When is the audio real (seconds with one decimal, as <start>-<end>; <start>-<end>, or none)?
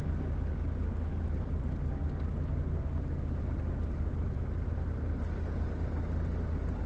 0.0-6.9